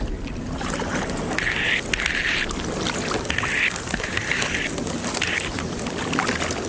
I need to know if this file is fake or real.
real